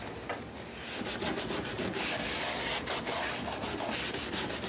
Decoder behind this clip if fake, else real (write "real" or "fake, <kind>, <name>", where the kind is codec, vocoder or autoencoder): real